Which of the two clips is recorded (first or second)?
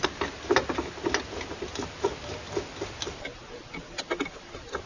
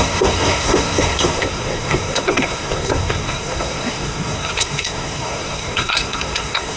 first